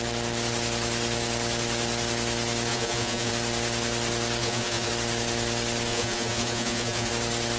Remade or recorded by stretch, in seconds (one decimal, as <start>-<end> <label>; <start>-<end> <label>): 0.0-2.7 recorded; 2.7-3.3 remade; 3.3-4.4 recorded; 4.4-4.9 remade; 4.9-5.9 recorded; 5.9-7.1 remade; 7.1-7.6 recorded